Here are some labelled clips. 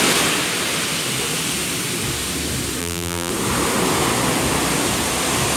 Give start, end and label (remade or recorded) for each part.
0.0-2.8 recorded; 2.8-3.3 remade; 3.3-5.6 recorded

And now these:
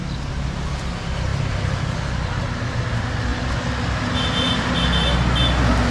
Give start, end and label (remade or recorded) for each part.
0.0-5.9 recorded

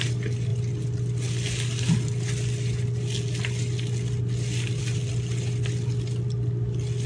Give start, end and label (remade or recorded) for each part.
0.0-7.1 recorded

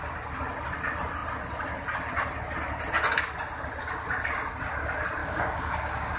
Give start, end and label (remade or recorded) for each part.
0.0-5.2 recorded; 5.2-6.2 remade

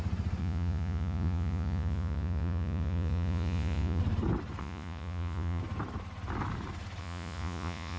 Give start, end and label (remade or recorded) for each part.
0.0-0.4 recorded; 0.4-4.0 remade; 4.0-4.6 recorded; 4.6-5.6 remade; 5.6-7.0 recorded; 7.0-8.0 remade

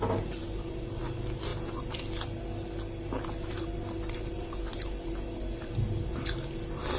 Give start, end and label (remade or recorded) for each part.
0.0-7.0 recorded

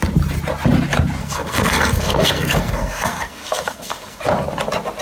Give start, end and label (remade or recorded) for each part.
0.0-1.2 recorded; 1.2-4.2 remade; 4.2-5.0 recorded